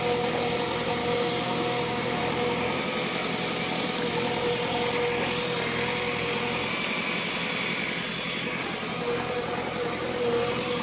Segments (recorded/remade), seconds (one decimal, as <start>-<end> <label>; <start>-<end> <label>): 0.0-1.0 recorded; 1.0-2.2 remade; 2.2-10.8 recorded

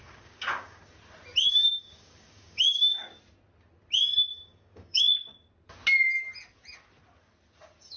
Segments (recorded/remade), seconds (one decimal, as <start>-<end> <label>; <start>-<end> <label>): 0.0-0.8 remade; 0.8-1.5 recorded; 1.5-3.0 remade; 3.0-4.3 recorded; 4.3-5.0 remade; 5.0-8.0 recorded

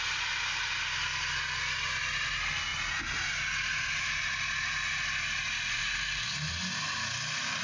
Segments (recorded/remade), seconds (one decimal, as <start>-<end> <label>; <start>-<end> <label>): 0.0-7.6 recorded